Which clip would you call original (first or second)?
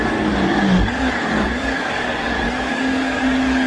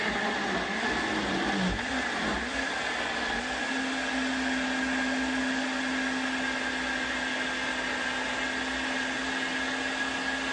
second